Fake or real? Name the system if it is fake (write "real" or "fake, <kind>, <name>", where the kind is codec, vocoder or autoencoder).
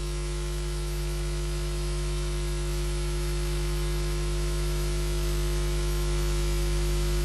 fake, autoencoder, DAC-VAE